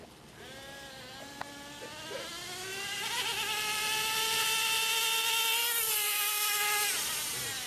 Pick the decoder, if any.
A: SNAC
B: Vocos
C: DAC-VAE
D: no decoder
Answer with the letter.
D